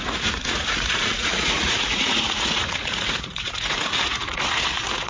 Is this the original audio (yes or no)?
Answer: no